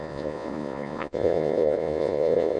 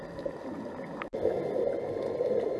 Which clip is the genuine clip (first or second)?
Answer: second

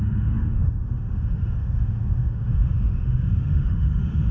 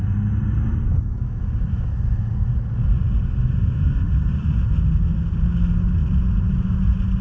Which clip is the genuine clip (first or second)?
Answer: second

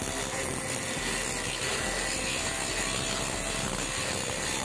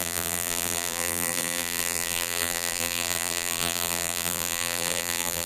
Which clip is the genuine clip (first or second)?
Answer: first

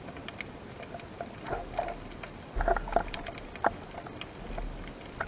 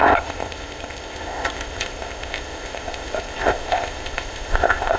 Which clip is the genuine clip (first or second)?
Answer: first